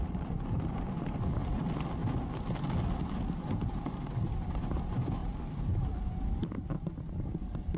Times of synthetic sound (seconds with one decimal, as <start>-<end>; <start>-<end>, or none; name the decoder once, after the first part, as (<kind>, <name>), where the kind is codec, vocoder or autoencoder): none